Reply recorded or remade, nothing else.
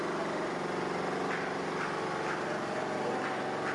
recorded